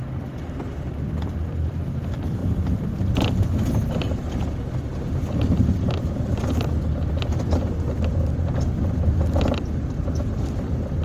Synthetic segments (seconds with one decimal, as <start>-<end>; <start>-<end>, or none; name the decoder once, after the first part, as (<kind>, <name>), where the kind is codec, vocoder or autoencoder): none